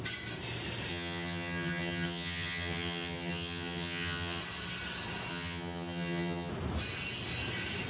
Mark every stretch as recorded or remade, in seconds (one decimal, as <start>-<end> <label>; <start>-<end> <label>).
0.0-0.9 recorded; 0.9-4.4 remade; 4.4-5.3 recorded; 5.3-6.5 remade; 6.5-7.9 recorded